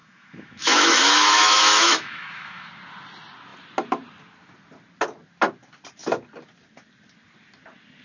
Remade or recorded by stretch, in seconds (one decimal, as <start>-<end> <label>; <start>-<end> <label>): 0.0-2.7 remade; 2.7-8.0 recorded